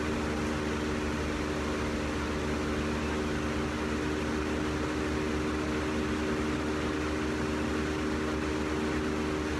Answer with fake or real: real